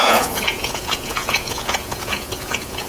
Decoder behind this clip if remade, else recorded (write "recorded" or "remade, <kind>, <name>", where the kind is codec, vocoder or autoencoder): remade, vocoder, Vocos